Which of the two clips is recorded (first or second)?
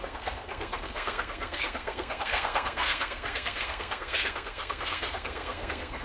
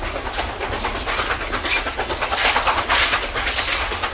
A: second